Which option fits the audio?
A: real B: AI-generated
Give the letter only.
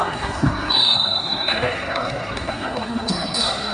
B